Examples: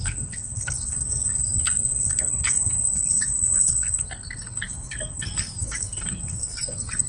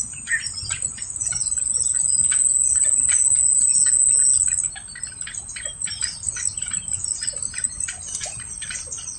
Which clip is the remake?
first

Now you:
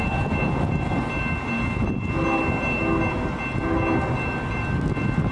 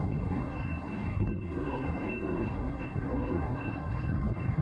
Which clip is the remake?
second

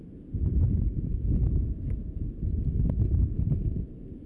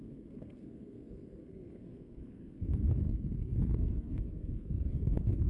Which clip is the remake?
second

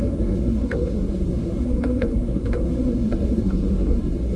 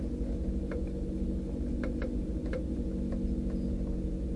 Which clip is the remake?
first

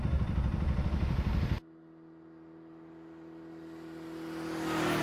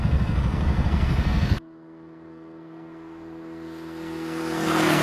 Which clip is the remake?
second